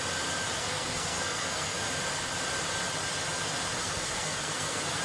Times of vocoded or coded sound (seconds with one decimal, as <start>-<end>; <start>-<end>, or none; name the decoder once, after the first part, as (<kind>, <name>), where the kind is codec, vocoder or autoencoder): 0.6-1.8 (codec, SNAC); 3.8-5.0